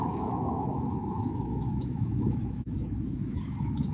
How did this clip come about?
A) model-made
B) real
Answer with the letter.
A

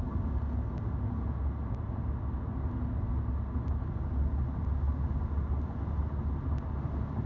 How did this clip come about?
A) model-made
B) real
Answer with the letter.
B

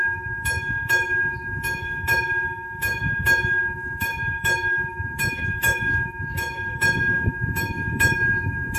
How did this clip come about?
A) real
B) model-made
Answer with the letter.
B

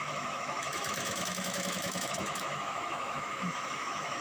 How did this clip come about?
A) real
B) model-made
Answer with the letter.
B